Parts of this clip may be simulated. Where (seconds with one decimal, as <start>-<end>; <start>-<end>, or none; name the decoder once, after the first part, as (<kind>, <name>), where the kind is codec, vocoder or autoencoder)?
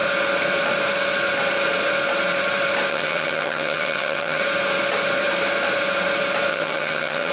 2.9-4.4 (vocoder, HiFi-GAN); 6.5-7.3